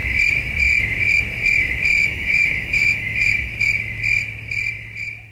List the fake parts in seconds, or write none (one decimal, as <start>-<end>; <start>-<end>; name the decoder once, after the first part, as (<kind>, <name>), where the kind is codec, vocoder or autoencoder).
2.0-3.5 (autoencoder, DAC-VAE)